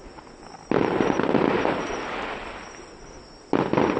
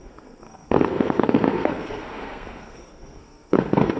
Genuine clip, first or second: first